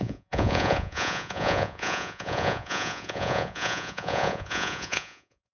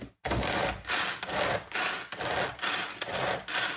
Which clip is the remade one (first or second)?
first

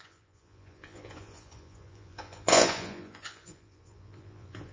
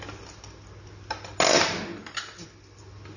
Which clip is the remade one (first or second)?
first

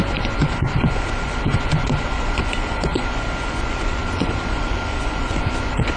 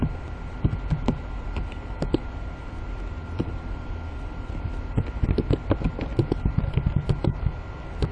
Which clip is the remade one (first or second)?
first